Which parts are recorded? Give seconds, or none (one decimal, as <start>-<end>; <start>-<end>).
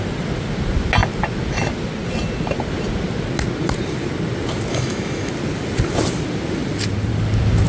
0.0-4.7; 5.3-7.7